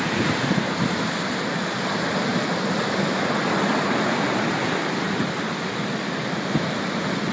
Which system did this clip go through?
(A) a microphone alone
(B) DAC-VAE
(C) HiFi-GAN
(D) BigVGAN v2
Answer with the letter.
D